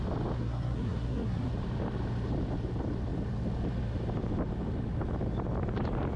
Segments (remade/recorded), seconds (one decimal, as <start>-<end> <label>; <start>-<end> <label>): 0.0-0.4 recorded; 0.4-1.5 remade; 1.5-6.2 recorded